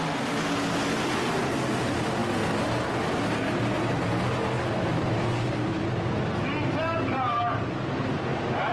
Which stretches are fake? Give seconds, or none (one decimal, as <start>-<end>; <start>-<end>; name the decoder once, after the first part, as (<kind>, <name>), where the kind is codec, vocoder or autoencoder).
none